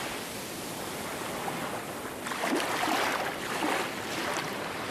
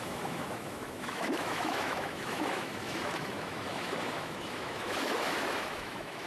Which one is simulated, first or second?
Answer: second